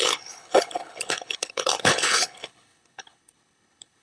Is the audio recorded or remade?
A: remade